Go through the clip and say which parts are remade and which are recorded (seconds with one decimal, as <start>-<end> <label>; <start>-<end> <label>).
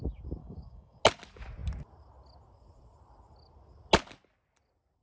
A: 0.0-0.4 recorded; 0.4-1.0 remade; 1.0-5.0 recorded